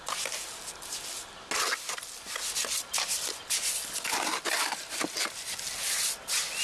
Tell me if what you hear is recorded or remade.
recorded